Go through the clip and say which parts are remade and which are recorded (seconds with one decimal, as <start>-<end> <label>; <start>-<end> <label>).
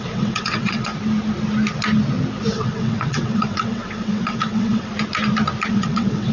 0.0-0.9 remade; 0.9-2.5 recorded; 2.5-4.9 remade; 4.9-5.7 recorded; 5.7-6.3 remade